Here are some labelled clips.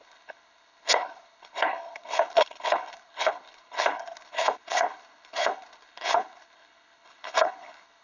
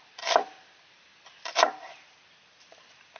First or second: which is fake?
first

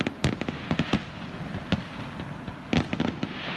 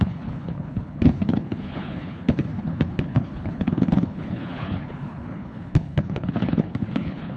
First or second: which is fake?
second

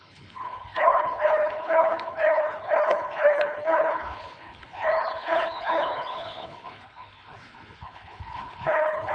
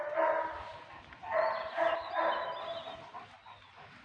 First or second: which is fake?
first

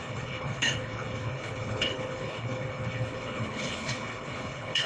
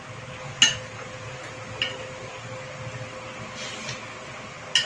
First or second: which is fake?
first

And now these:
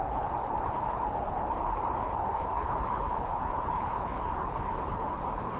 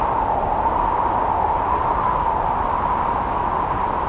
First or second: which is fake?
first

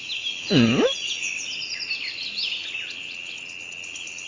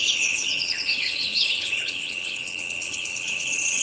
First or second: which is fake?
second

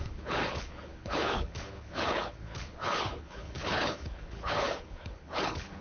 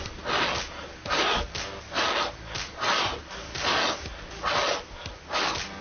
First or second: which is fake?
first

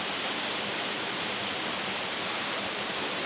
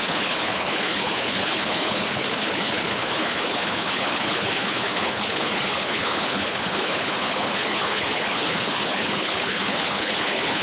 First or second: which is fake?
second